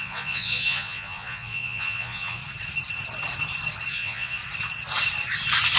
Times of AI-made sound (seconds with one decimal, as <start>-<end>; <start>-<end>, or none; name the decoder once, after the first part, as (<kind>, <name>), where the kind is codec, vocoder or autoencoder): 0.0-2.4 (vocoder, Vocos); 3.9-4.4